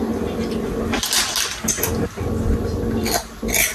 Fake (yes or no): no